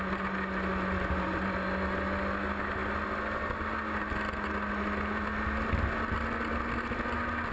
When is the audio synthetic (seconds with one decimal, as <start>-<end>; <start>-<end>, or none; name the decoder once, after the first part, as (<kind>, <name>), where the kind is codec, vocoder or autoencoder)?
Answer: none